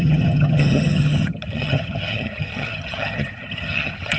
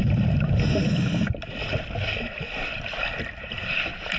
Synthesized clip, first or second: first